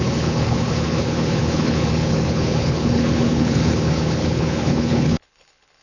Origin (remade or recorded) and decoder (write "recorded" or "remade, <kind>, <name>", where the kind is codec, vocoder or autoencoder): remade, codec, HILCodec